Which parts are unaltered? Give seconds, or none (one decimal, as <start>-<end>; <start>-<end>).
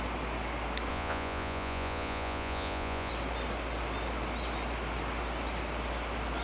0.0-0.9; 3.1-6.4